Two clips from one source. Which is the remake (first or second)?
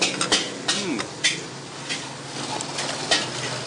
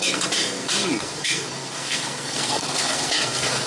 second